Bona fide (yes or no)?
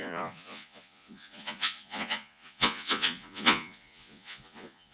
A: no